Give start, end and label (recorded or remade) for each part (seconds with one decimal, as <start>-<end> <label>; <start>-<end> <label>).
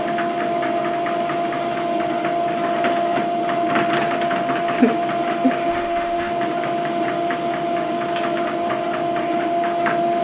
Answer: 0.0-5.7 recorded; 5.7-6.3 remade; 6.3-10.2 recorded